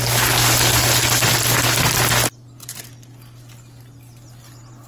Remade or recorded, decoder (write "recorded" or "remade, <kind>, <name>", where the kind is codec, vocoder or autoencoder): recorded